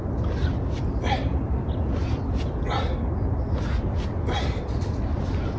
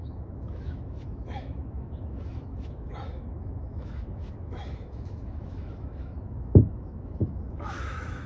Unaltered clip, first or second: first